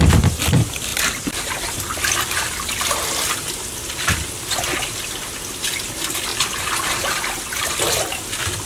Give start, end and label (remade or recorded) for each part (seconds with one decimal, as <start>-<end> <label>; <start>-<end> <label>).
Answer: 0.0-0.9 recorded; 0.9-2.7 remade; 2.7-6.3 recorded; 6.3-7.4 remade; 7.4-8.7 recorded